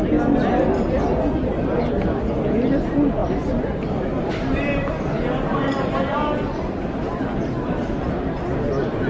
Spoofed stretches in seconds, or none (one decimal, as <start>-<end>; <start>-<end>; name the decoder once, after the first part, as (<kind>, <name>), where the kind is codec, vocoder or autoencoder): 3.2-5.2 (vocoder, BigVGAN v2)